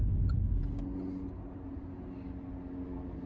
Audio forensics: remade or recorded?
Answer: recorded